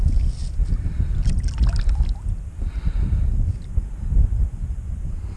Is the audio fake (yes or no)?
no